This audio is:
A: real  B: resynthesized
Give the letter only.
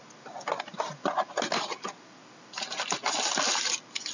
A